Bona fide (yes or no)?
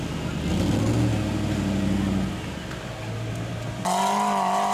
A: yes